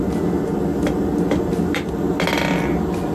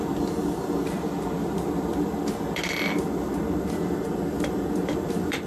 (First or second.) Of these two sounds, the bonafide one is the first